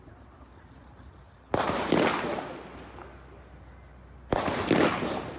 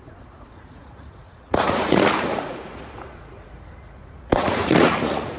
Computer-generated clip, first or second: second